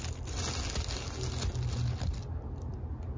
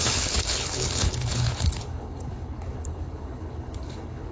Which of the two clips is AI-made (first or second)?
second